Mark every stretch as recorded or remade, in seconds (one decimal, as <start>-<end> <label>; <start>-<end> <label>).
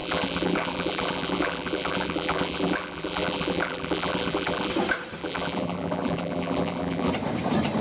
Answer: 0.0-4.7 remade; 4.7-5.2 recorded; 5.2-7.1 remade; 7.1-7.8 recorded